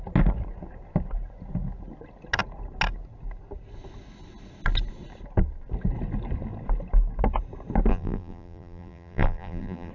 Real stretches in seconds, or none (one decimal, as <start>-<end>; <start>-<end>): 0.0-7.9